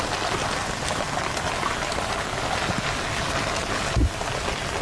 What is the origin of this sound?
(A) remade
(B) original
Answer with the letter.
B